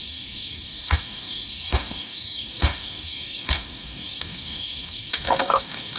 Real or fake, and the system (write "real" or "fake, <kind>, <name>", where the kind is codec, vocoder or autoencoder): fake, codec, DAC